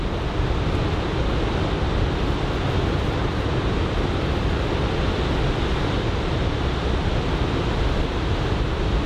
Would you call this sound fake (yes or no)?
no